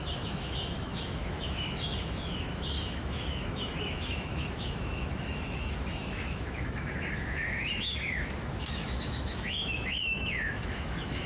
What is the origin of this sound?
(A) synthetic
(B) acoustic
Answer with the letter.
A